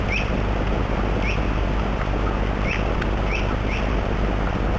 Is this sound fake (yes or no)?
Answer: no